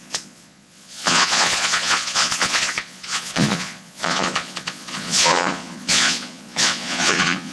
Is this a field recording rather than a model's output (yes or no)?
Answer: no